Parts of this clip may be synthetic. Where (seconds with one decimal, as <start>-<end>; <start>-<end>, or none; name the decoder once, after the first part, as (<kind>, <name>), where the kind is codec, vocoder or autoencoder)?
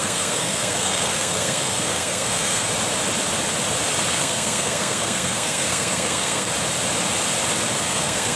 0.0-2.7 (codec, SNAC); 4.1-6.5; 7.8-8.4